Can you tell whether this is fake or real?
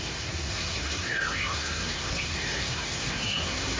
fake